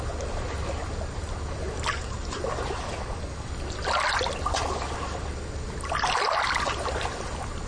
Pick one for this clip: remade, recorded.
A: recorded